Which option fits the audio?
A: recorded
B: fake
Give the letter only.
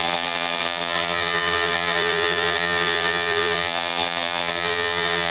B